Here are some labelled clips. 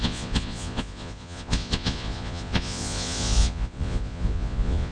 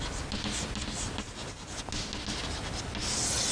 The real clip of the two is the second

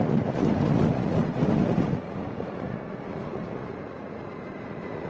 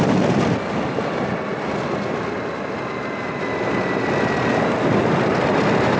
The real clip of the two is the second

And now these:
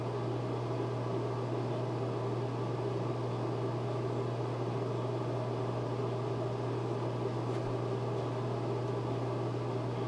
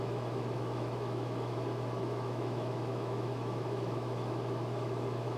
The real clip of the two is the first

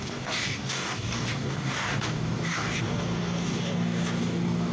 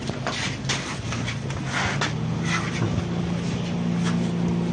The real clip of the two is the second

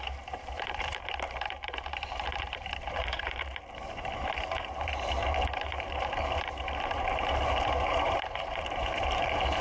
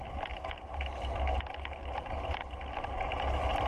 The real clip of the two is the second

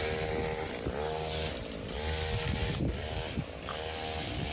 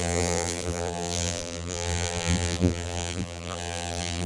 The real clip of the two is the first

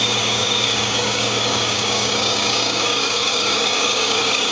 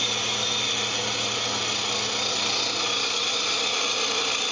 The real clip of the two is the second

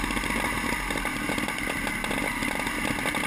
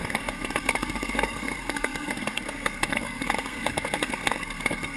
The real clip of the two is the first